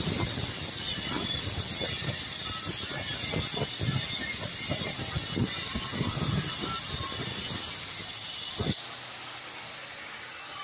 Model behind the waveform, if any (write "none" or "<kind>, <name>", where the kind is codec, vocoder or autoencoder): none